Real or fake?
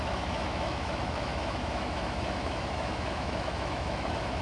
fake